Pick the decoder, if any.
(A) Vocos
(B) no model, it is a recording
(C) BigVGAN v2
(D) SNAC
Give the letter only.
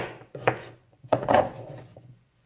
A